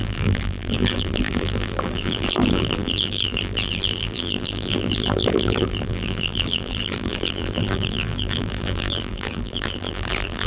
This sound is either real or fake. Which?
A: fake